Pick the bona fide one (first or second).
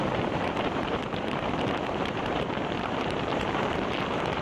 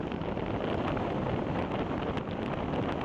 second